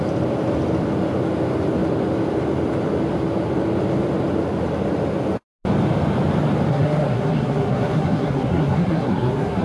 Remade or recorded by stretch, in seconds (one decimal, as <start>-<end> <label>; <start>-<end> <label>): 0.0-6.7 recorded; 6.7-9.6 remade